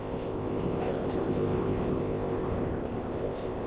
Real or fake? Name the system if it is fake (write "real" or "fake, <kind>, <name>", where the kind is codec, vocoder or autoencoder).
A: fake, codec, ZipCodec